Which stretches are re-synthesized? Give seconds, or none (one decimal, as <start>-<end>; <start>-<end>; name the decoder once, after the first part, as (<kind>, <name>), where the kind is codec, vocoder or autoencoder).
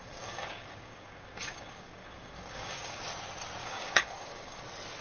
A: 0.0-3.0 (codec, DAC); 3.6-4.6